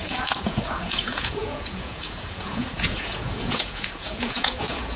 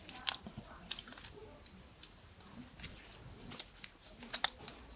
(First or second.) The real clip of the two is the second